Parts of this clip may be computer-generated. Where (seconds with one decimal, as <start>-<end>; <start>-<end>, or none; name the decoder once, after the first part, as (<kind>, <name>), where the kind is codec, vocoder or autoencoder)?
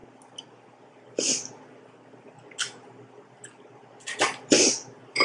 none